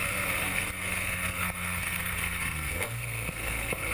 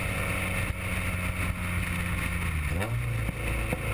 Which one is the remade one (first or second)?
first